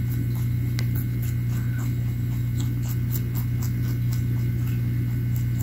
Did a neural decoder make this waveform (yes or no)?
no